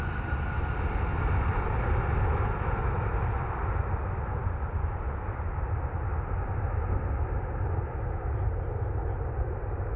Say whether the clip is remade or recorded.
recorded